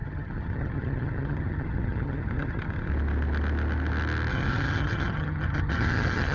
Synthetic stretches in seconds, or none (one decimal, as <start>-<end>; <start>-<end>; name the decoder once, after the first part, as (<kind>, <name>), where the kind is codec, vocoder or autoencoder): 0.0-2.9 (vocoder, HiFi-GAN); 4.3-6.3